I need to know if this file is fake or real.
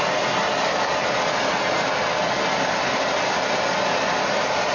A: real